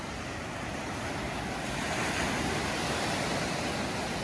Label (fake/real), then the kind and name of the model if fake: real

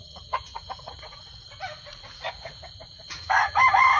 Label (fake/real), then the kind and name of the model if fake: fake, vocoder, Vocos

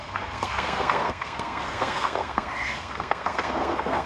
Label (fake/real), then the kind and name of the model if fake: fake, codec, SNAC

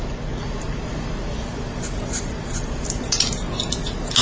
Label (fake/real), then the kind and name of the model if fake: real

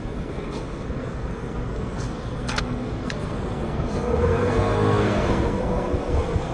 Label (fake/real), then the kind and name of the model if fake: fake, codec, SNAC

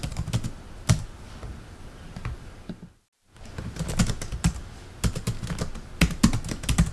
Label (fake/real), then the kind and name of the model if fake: real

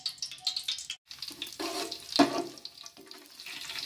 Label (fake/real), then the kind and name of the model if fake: real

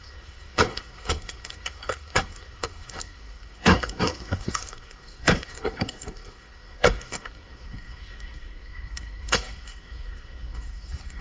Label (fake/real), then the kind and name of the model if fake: fake, codec, SNAC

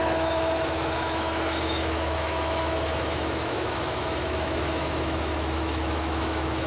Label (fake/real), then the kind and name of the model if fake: fake, autoencoder, DAC-VAE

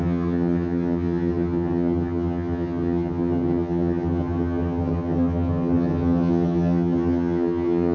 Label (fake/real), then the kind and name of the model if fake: fake, vocoder, HiFi-GAN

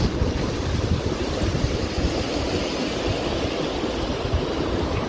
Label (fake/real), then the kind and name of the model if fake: real